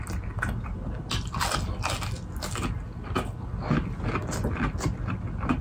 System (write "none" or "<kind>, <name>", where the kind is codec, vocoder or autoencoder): none